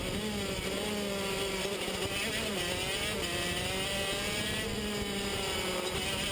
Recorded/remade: recorded